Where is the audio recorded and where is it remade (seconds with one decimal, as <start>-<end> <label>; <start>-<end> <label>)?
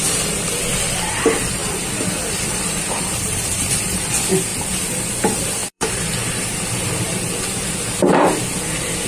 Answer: 0.0-1.6 recorded; 1.6-4.1 remade; 4.1-4.5 recorded; 4.5-5.1 remade; 5.1-5.6 recorded; 5.6-6.4 remade; 6.4-9.1 recorded